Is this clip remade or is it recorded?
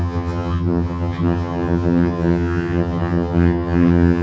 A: remade